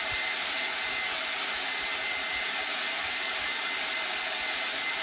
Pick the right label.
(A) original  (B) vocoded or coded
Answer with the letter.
A